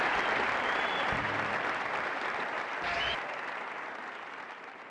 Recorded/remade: remade